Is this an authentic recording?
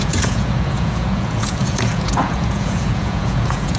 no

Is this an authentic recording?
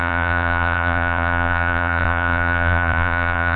no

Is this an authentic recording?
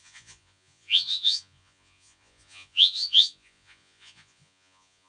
no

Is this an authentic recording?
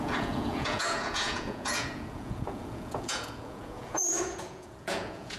no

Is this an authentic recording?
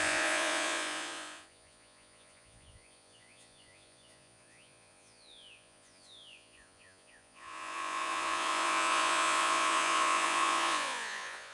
no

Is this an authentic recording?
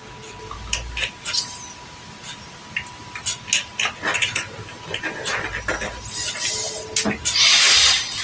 yes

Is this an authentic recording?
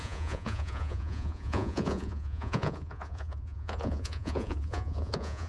no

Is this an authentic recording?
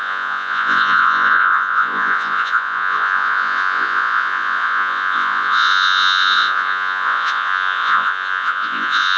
no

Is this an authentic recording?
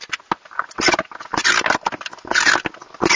yes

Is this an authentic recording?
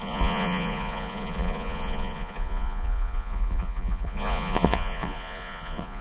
no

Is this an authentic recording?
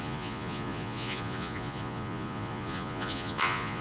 no